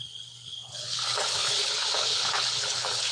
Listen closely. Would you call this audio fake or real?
fake